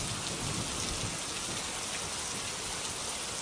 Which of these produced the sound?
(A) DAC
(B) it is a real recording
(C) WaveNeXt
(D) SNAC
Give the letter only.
B